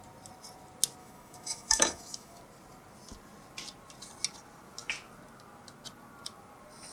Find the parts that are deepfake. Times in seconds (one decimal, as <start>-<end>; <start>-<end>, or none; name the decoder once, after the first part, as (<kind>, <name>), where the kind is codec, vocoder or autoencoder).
1.0-2.4 (autoencoder, DAC-VAE)